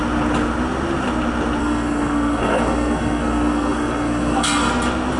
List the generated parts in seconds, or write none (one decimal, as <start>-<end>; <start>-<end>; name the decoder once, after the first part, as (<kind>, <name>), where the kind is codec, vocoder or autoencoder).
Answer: 1.6-4.7 (codec, SNAC)